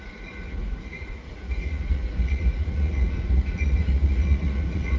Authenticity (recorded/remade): remade